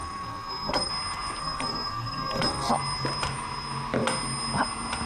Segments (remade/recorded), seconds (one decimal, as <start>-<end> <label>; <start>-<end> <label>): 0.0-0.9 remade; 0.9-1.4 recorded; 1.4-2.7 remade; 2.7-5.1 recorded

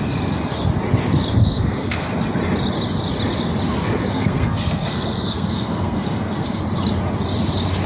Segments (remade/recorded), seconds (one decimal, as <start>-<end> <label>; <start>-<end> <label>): 0.0-1.4 recorded; 1.4-2.1 remade; 2.1-4.1 recorded; 4.1-6.6 remade; 6.6-7.9 recorded

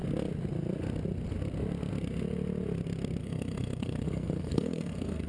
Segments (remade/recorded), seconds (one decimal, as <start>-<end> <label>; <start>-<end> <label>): 0.0-3.2 recorded; 3.2-5.3 remade

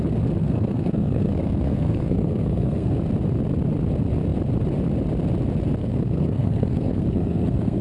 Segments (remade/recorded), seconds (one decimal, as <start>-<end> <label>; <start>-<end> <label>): 0.0-0.4 recorded; 0.4-2.9 remade; 2.9-5.8 recorded; 5.8-7.8 remade

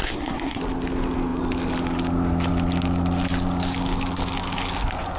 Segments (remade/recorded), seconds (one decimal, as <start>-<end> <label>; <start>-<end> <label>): 0.0-0.6 remade; 0.6-5.2 recorded

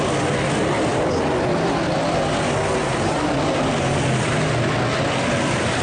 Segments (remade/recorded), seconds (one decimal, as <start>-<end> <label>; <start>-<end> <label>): 0.0-5.8 recorded

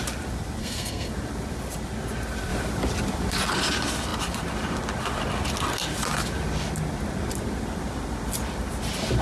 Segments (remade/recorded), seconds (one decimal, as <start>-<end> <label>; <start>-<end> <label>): 0.0-0.6 recorded; 0.6-1.1 remade; 1.1-9.2 recorded